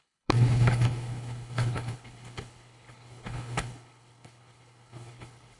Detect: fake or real fake